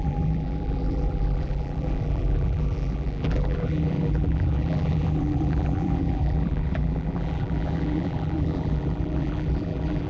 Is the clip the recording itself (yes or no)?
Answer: no